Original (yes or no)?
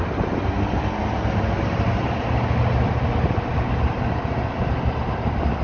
yes